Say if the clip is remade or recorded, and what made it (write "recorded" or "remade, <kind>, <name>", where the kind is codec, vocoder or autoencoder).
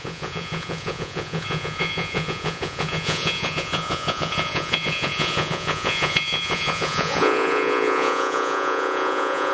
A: remade, vocoder, Vocos